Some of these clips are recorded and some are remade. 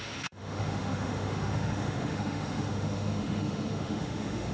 remade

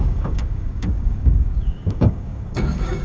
remade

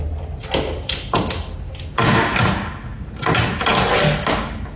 recorded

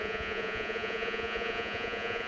remade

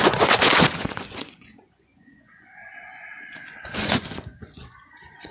remade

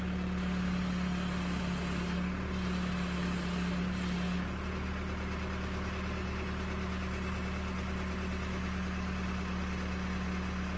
recorded